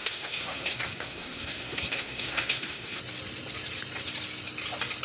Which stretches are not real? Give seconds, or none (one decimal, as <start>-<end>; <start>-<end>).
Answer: 0.0-3.0